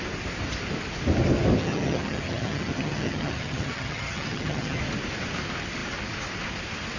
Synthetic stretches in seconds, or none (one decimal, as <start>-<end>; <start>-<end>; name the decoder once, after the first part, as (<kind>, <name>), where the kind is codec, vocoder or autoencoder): 1.6-4.8 (vocoder, HiFi-GAN)

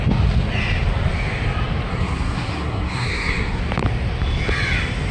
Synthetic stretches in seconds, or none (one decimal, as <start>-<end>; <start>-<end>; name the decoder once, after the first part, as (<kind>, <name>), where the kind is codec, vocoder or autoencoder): 1.9-3.6 (codec, SNAC)

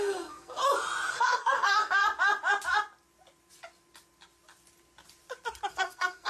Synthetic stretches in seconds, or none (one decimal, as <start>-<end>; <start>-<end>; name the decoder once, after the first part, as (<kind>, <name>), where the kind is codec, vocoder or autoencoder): 0.0-0.6 (codec, SNAC); 1.1-2.0; 5.7-6.3

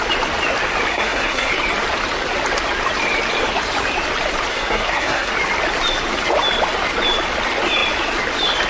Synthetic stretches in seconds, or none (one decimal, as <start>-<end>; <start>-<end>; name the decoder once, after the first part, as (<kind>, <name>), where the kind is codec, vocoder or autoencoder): 0.9-1.5 (codec, SNAC); 4.5-5.3

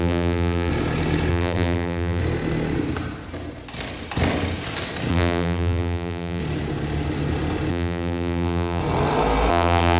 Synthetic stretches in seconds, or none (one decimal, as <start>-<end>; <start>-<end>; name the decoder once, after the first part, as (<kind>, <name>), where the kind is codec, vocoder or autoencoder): 0.0-0.7 (vocoder, BigVGAN v2); 1.3-2.2; 5.1-6.4; 7.7-8.8; 9.5-10.0

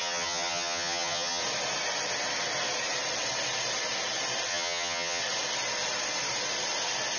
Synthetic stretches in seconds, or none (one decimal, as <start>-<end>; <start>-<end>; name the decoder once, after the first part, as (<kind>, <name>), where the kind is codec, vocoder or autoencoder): 0.0-1.4 (vocoder, HiFi-GAN); 4.5-5.2

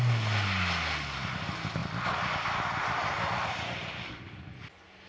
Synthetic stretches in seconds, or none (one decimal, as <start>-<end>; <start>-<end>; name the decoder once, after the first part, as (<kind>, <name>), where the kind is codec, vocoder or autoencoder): none